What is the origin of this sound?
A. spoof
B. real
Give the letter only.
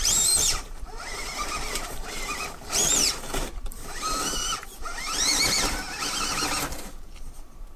A